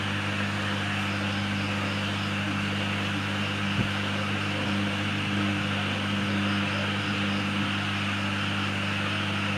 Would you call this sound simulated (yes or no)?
no